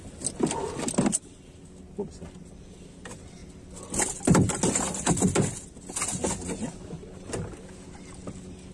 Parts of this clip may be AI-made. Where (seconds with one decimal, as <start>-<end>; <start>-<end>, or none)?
none